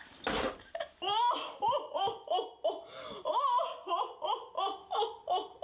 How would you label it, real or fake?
real